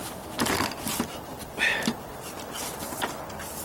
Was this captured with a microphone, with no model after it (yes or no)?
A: yes